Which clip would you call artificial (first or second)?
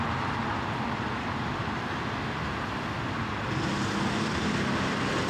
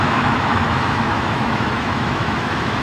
second